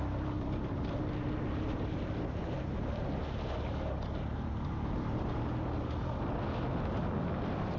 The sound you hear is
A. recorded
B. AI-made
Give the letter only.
A